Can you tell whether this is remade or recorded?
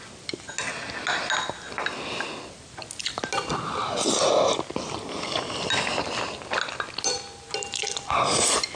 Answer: recorded